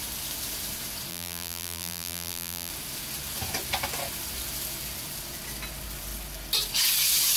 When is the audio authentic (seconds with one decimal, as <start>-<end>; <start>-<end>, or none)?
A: 0.0-1.1; 2.7-7.4